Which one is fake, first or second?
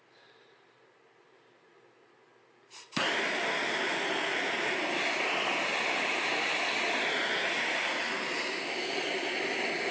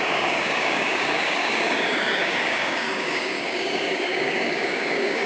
second